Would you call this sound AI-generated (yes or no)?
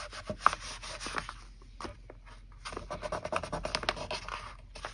no